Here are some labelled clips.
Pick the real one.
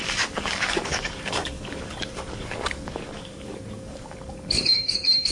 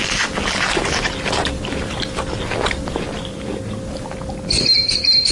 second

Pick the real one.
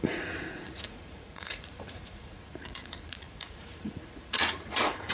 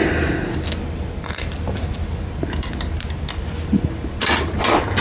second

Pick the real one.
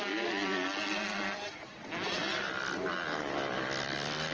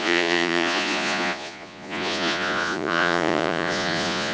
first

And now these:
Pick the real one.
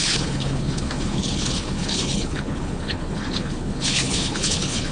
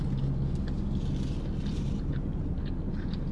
second